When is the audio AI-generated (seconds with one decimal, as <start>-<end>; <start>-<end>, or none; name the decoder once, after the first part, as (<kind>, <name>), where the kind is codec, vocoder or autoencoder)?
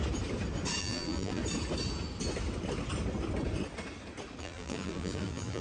0.8-1.4 (vocoder, BigVGAN v2); 4.4-5.6